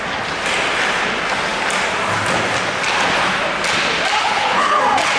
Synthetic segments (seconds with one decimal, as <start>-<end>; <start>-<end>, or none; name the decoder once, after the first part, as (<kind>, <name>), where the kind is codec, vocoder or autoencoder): 4.2-4.8 (codec, HILCodec)